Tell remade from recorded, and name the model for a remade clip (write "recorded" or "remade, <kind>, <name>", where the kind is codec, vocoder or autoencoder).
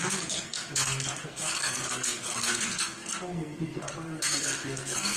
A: remade, codec, SNAC